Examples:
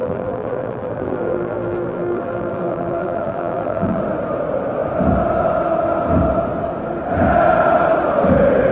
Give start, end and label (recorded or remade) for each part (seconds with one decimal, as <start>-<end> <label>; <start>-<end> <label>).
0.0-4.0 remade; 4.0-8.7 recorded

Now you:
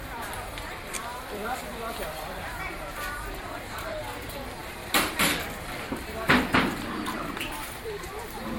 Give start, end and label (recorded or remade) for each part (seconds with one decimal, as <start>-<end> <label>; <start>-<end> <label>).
0.0-1.2 recorded; 1.2-4.1 remade; 4.1-4.6 recorded; 4.6-8.0 remade; 8.0-8.6 recorded

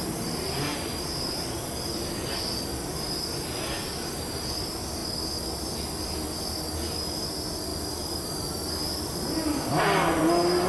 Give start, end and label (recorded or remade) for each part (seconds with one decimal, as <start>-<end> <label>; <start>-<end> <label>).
0.0-0.7 recorded; 0.7-1.6 remade; 1.6-10.7 recorded